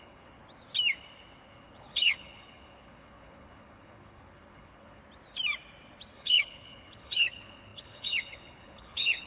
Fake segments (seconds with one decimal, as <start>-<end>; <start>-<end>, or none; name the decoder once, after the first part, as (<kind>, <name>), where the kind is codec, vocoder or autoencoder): 0.0-0.4 (codec, HILCodec); 1.5-5.0; 6.1-9.3